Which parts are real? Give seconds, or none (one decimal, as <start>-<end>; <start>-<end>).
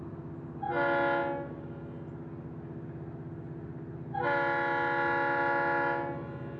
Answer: 0.0-6.6